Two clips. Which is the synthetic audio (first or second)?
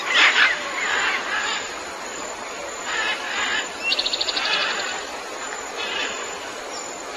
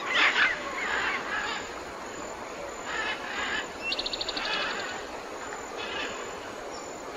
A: first